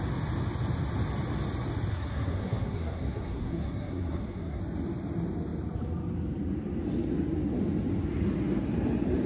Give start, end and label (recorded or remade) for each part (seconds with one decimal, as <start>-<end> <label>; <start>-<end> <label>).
0.0-1.9 recorded; 1.9-4.6 remade; 4.6-9.3 recorded